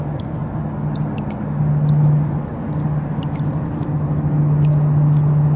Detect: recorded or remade recorded